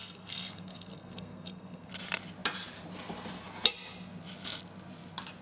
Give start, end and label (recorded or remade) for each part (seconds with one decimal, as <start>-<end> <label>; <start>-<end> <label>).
0.0-1.9 remade; 1.9-5.4 recorded